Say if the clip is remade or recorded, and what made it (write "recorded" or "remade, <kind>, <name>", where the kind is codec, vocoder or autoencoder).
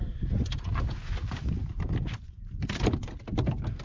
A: recorded